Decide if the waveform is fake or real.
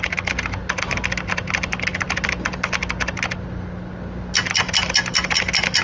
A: real